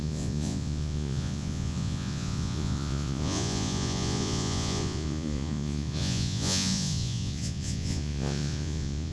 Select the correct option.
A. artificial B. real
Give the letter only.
A